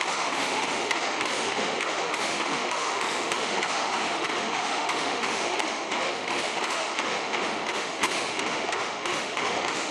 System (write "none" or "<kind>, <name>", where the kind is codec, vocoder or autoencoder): autoencoder, DAC-VAE